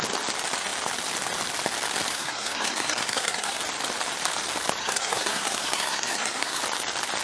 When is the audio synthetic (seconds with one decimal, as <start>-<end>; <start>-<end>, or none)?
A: 2.1-3.6; 4.8-6.6